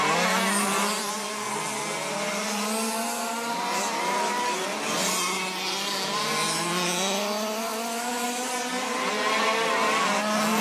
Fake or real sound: real